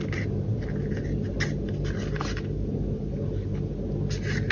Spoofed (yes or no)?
no